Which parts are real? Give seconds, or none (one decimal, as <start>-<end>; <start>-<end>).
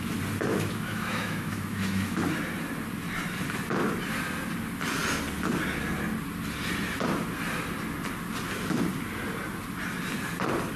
0.0-0.5; 2.2-10.8